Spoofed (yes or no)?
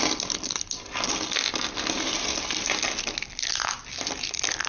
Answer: no